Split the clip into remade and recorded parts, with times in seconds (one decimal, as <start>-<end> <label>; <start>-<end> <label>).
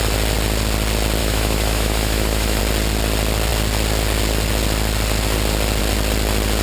0.0-1.2 recorded; 1.2-2.6 remade; 2.6-6.6 recorded